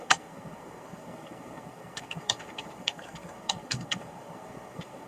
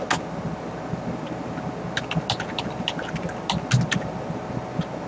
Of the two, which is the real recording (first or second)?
second